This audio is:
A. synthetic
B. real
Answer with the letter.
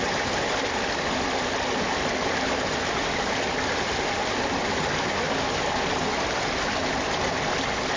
B